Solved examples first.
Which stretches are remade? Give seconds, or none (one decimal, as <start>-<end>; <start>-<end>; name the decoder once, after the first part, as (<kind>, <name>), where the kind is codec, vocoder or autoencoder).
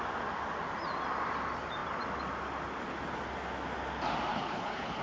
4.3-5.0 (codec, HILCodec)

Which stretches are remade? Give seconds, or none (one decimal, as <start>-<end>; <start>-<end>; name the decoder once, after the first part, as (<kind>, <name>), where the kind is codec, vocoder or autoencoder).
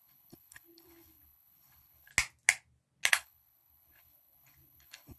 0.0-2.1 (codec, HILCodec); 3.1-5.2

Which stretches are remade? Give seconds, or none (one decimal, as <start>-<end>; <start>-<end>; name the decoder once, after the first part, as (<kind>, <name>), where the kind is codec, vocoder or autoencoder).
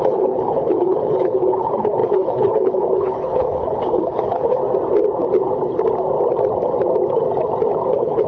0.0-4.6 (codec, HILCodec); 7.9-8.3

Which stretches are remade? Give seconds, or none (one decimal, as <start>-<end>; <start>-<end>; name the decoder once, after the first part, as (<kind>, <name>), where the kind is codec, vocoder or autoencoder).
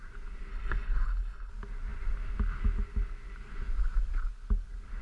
0.5-1.5 (codec, HILCodec)